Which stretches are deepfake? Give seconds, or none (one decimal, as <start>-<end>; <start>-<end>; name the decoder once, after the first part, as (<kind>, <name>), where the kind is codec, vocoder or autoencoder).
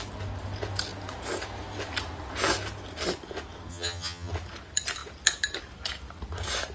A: 3.7-4.3 (vocoder, HiFi-GAN)